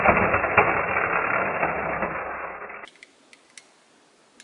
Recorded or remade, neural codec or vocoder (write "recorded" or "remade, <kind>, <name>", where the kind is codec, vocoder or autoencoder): recorded